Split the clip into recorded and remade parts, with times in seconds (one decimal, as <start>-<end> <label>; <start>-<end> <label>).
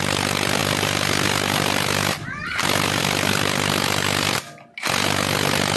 0.0-5.8 recorded